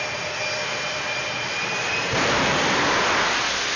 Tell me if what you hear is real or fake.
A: real